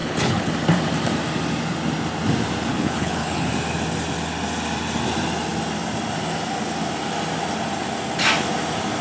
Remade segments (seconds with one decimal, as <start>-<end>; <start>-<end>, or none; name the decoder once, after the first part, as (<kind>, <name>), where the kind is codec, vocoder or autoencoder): 0.0-0.5 (codec, HILCodec); 2.7-3.5